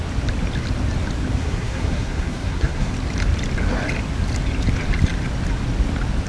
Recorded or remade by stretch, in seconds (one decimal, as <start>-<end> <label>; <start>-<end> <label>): 0.0-1.4 recorded; 1.4-2.9 remade; 2.9-6.3 recorded